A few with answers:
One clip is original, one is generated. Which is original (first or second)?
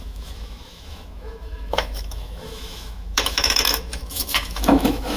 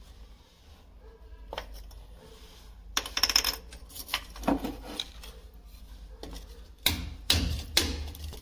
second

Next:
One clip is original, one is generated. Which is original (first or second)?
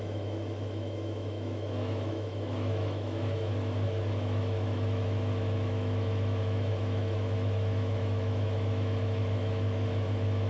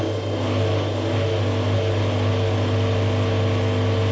second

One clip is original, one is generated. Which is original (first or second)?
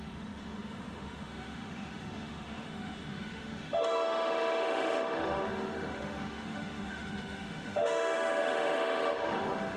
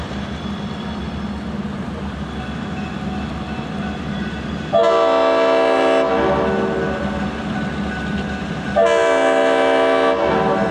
second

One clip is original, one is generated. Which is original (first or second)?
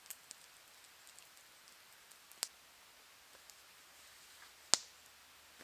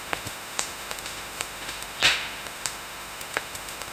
first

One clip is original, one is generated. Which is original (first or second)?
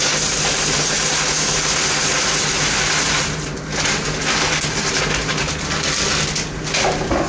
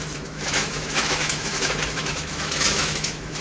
first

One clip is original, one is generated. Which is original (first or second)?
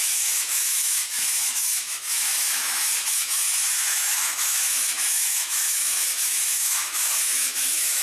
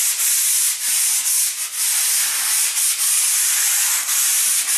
second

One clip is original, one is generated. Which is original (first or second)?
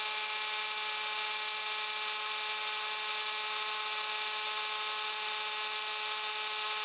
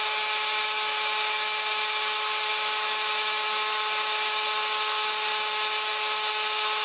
first